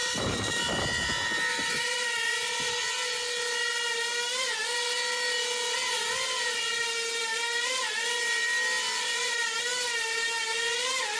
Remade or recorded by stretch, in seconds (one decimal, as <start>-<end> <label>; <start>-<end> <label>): 0.0-0.6 remade; 0.6-1.5 recorded; 1.5-2.1 remade; 2.1-11.2 recorded